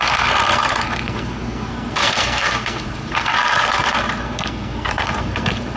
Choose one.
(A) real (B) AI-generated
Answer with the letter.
B